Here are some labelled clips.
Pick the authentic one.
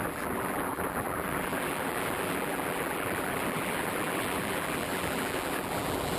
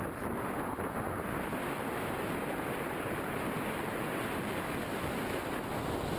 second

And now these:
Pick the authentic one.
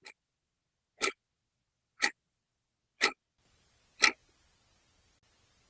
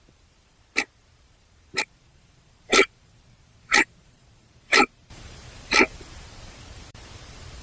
first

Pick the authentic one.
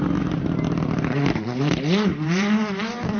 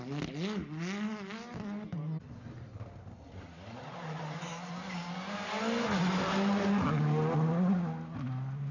second